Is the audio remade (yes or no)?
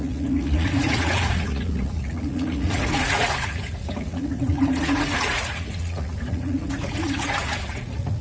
yes